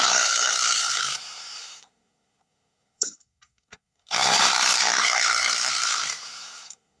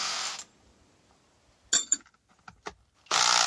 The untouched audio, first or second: second